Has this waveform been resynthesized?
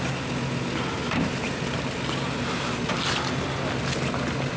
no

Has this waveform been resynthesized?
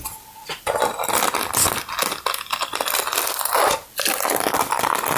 no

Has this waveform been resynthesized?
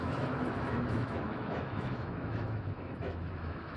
yes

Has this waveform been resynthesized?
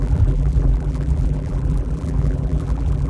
yes